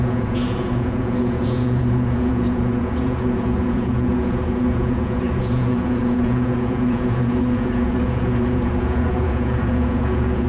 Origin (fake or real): fake